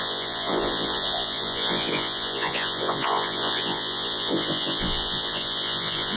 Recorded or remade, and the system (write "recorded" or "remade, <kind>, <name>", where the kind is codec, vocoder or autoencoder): remade, vocoder, Vocos